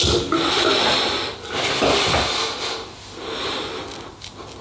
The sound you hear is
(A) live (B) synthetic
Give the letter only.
A